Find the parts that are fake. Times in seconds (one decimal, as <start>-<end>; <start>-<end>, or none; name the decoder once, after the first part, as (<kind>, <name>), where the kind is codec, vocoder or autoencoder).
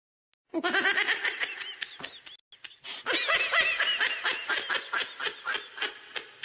none